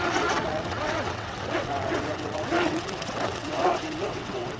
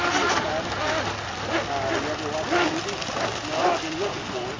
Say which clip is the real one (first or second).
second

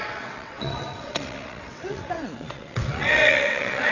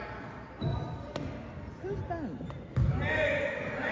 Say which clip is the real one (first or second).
second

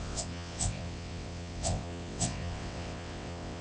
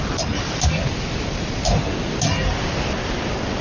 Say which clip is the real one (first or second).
second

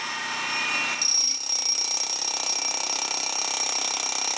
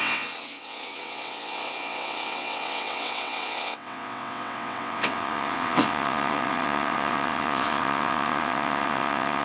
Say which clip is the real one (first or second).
first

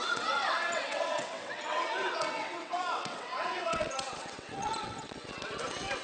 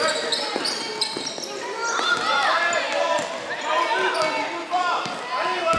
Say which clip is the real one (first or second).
second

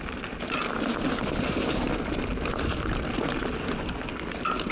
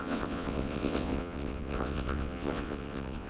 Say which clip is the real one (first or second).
first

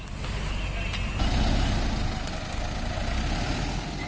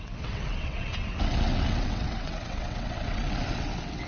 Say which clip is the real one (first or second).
first